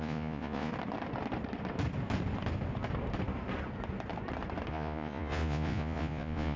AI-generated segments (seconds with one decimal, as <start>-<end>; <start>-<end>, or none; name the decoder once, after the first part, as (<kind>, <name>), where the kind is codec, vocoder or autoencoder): 0.0-0.7 (vocoder, Vocos); 4.7-6.6